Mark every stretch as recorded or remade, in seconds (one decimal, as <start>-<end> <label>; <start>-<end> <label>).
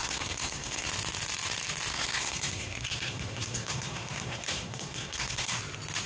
0.0-0.9 remade; 0.9-1.9 recorded; 1.9-5.6 remade; 5.6-6.1 recorded